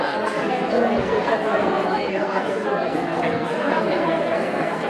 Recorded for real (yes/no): no